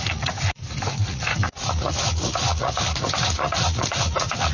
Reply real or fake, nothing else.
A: fake